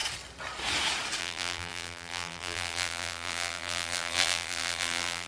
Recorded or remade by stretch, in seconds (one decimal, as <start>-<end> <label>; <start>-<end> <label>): 0.0-1.2 recorded; 1.2-5.3 remade